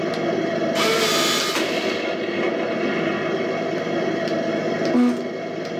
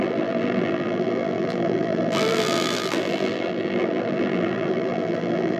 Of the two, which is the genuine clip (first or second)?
first